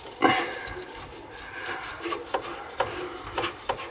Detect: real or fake real